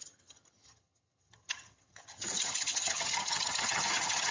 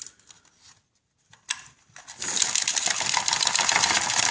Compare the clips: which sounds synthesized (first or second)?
first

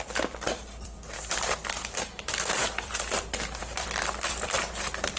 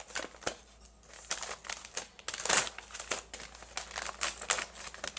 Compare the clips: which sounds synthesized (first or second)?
first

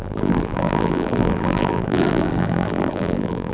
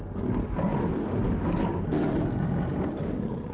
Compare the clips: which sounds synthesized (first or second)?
first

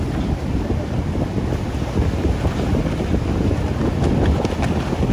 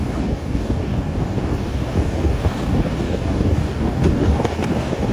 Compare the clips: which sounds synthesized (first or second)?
second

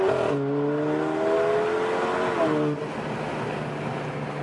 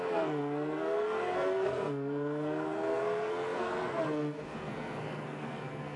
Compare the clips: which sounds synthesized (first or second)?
second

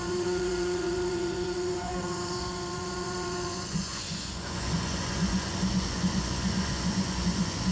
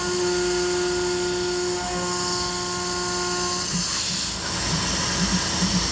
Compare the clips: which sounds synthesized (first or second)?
first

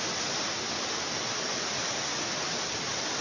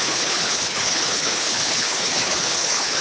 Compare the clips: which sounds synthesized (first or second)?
second